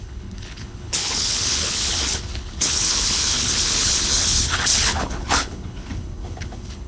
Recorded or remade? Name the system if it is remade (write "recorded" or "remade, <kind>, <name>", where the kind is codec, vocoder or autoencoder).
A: remade, codec, HILCodec